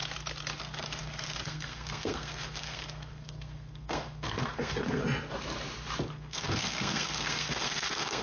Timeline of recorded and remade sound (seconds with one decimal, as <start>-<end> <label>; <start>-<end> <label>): 0.0-0.6 recorded; 0.6-5.0 remade; 5.0-6.1 recorded; 6.1-8.2 remade